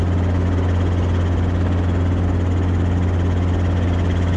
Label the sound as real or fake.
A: real